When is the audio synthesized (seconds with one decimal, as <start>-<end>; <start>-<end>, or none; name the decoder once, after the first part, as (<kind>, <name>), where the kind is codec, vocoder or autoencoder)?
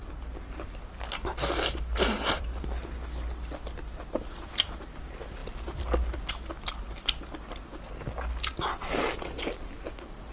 none